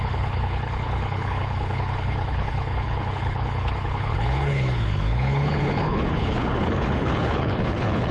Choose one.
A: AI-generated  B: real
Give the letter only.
A